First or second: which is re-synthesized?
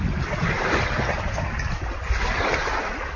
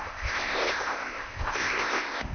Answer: second